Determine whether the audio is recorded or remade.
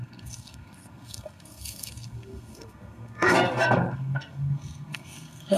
remade